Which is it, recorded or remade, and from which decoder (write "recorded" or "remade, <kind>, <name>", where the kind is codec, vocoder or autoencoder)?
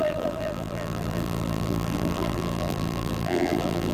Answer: remade, vocoder, BigVGAN v2